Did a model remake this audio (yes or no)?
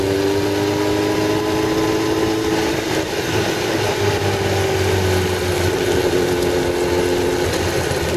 no